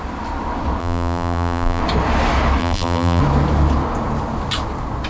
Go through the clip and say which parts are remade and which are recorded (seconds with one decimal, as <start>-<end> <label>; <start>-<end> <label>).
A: 0.0-0.8 recorded; 0.8-1.8 remade; 1.8-2.6 recorded; 2.6-3.2 remade; 3.2-5.1 recorded